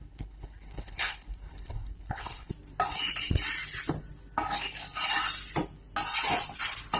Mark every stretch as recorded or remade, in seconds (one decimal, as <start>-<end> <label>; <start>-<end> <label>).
0.0-2.5 remade; 2.5-7.0 recorded